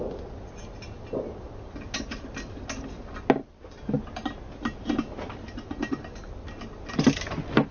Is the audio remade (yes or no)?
no